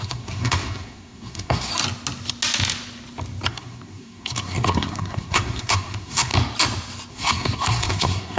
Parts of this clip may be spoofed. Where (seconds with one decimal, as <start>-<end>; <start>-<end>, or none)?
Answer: 0.0-1.7; 3.5-6.3; 7.1-8.4